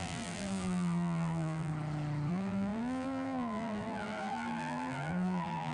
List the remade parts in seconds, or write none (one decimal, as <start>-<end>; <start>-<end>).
0.0-1.7; 2.3-5.7